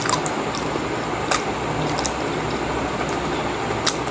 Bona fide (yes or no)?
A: yes